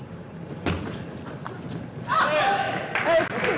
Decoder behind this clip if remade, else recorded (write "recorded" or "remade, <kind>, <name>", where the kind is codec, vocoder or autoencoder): recorded